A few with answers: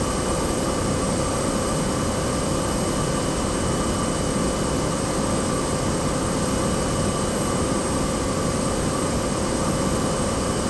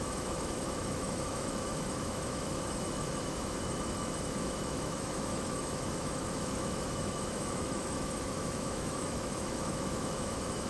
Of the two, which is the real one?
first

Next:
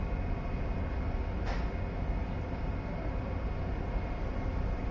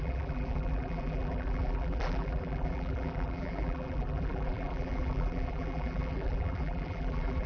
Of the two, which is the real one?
first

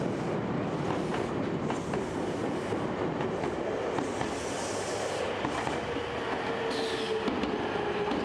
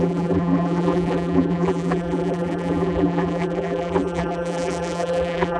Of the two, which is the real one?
first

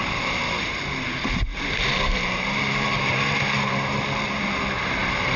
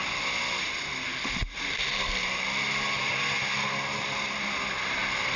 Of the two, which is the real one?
second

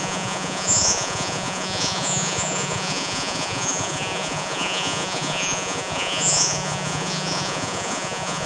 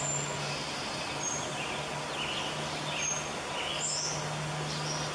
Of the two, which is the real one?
second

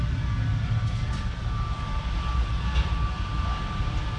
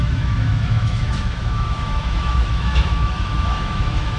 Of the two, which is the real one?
first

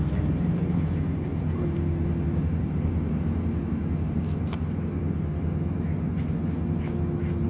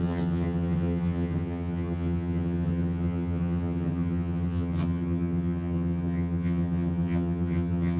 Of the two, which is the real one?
first